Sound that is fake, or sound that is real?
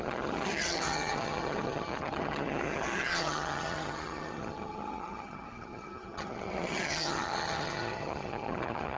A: fake